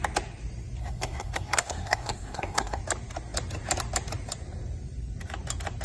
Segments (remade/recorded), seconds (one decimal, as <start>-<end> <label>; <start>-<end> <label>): 0.0-0.8 recorded; 0.8-2.8 remade; 2.8-5.8 recorded